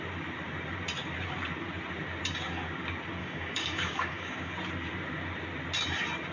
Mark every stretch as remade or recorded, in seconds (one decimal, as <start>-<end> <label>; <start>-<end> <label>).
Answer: 0.0-3.2 recorded; 3.2-4.5 remade; 4.5-6.3 recorded